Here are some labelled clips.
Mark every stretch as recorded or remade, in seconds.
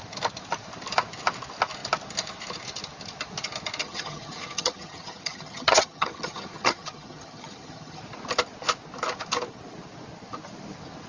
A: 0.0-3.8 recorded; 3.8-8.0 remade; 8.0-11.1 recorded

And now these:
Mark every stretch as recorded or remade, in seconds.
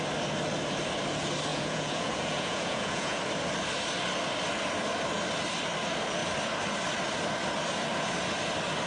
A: 0.0-1.5 recorded; 1.5-3.2 remade; 3.2-8.9 recorded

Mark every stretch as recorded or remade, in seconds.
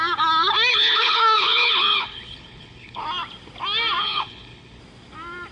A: 0.0-0.7 recorded; 0.7-3.0 remade; 3.0-4.0 recorded; 4.0-4.8 remade; 4.8-5.5 recorded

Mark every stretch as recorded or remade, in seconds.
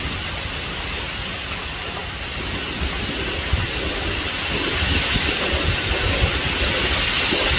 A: 0.0-7.6 recorded